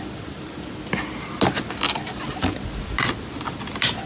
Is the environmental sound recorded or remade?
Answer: recorded